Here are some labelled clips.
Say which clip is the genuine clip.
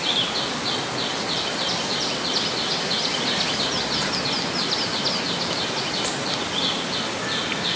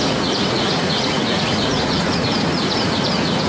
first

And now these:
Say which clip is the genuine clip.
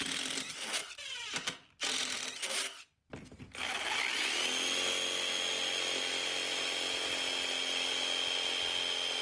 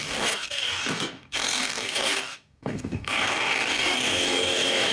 first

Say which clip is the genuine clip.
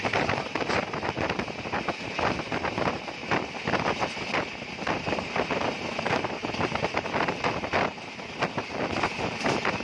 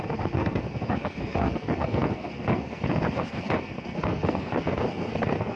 first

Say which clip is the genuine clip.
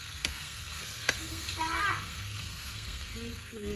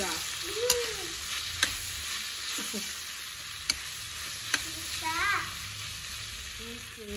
second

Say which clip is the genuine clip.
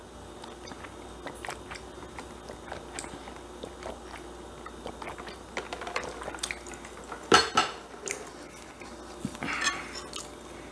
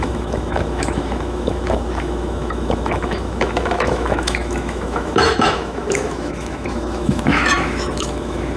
first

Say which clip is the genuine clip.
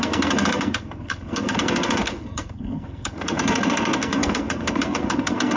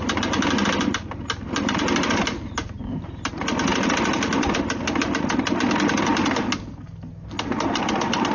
second